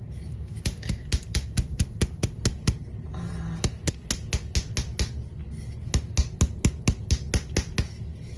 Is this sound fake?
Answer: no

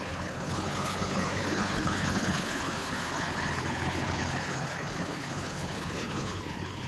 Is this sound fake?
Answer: yes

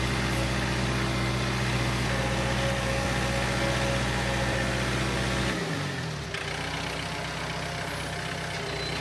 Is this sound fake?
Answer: no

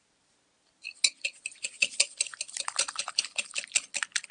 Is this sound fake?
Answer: no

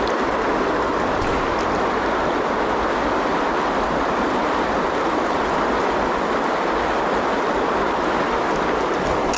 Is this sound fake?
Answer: no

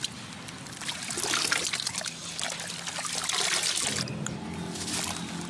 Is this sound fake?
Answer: no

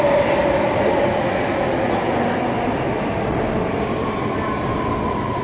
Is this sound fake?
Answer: no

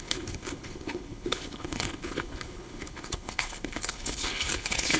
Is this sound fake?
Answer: yes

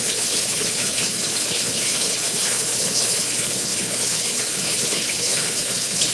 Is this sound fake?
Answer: yes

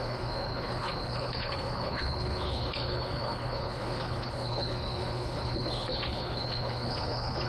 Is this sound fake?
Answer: yes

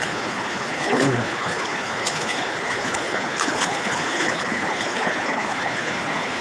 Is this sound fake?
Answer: yes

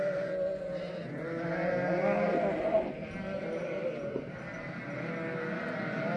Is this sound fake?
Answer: no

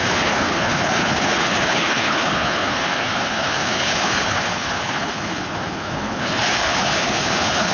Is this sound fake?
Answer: yes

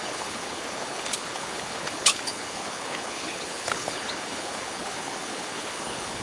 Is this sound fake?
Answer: yes